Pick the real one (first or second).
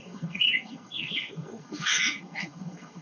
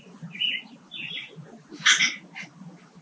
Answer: second